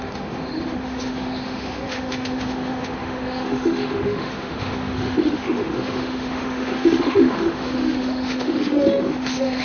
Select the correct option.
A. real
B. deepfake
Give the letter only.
B